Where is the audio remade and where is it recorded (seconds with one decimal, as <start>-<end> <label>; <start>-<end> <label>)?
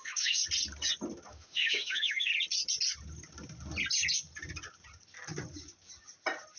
0.0-0.4 remade; 0.4-1.3 recorded; 1.3-2.3 remade; 2.3-6.6 recorded